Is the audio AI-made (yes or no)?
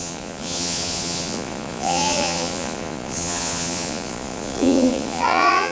yes